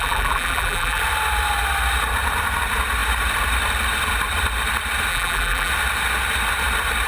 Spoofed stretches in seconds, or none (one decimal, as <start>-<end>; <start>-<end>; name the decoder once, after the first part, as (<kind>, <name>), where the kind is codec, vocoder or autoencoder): 0.0-1.0 (vocoder, BigVGAN v2); 5.1-5.7